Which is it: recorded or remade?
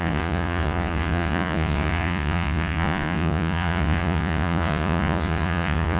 remade